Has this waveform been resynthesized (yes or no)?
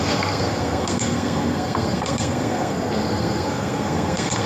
yes